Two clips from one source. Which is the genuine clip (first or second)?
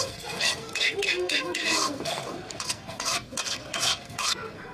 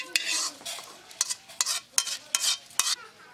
second